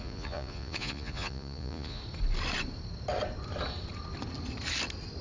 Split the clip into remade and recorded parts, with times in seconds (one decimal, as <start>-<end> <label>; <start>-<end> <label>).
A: 0.0-2.0 remade; 2.0-5.2 recorded